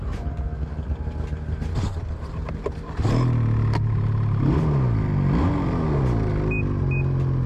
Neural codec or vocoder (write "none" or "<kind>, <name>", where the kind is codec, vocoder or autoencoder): none